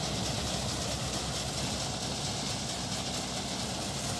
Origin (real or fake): real